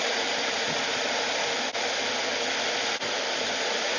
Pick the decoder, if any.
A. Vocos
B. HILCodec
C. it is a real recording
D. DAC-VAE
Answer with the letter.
C